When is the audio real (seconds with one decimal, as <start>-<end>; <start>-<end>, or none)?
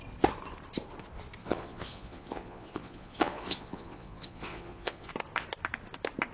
0.0-1.4; 5.1-6.3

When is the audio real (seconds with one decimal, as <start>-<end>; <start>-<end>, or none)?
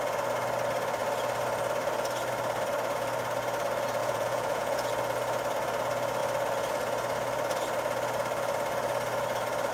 0.0-4.0; 4.9-9.7